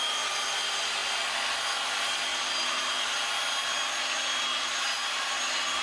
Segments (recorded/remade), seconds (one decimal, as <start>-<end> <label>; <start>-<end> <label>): 0.0-2.3 recorded; 2.3-3.3 remade; 3.3-4.5 recorded; 4.5-5.3 remade; 5.3-5.8 recorded